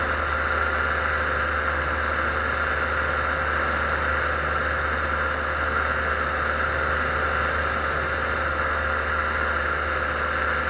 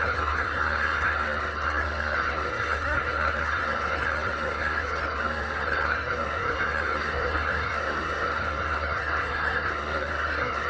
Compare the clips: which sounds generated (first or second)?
second